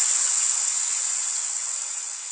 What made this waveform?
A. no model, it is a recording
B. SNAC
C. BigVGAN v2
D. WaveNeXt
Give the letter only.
D